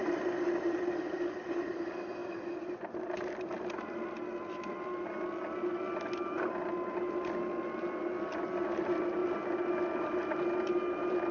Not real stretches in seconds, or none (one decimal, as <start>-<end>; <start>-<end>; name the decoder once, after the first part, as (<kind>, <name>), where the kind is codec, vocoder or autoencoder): none